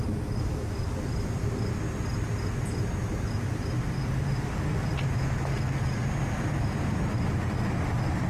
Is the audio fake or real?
real